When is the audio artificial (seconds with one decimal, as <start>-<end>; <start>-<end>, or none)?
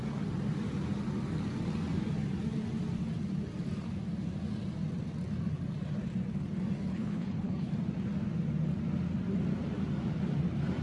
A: 6.9-7.7